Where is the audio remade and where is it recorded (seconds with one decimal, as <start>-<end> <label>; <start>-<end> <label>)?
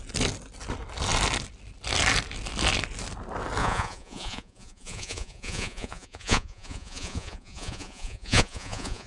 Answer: 0.0-3.6 recorded; 3.6-9.1 remade